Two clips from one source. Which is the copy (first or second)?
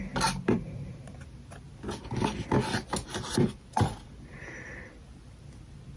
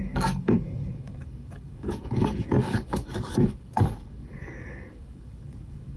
second